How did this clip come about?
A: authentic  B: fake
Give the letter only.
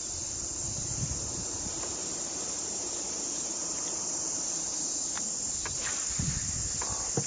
B